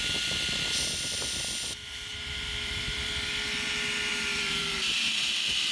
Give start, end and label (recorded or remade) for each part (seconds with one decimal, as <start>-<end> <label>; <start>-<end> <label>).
0.0-2.1 recorded; 2.1-3.1 remade; 3.1-4.1 recorded; 4.1-5.7 remade